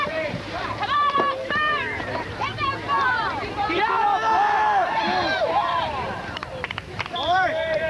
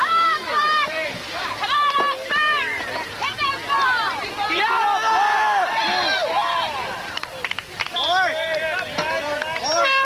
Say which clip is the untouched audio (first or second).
second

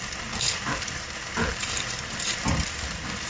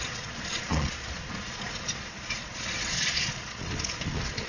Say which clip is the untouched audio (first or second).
first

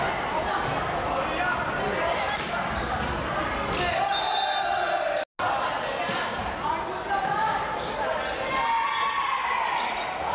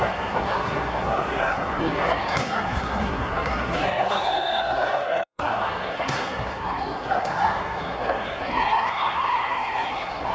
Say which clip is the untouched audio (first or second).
first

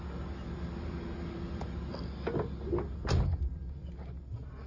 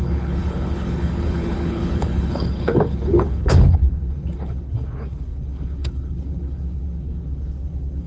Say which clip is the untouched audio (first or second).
first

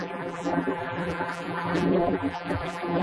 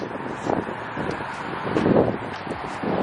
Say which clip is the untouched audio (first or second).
second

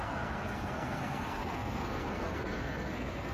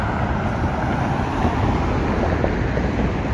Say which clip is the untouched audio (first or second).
second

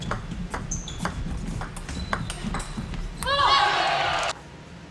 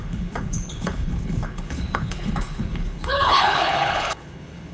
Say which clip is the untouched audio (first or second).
first